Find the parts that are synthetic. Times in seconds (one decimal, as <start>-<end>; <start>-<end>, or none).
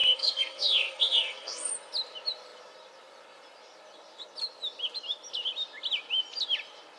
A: 0.0-1.7